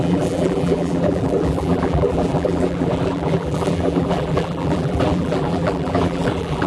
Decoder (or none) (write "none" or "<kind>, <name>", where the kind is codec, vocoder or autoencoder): vocoder, BigVGAN v2